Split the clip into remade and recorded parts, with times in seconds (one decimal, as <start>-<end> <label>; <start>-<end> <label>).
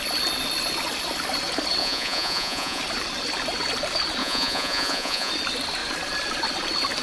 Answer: 0.0-1.8 recorded; 1.8-2.8 remade; 2.8-4.2 recorded; 4.2-5.3 remade; 5.3-7.0 recorded